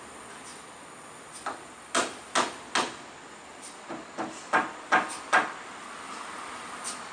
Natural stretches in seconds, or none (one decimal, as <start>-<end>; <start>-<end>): 0.0-7.1